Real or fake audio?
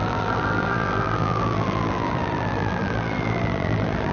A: fake